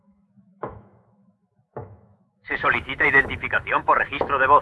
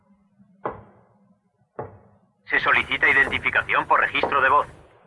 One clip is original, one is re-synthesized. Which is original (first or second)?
second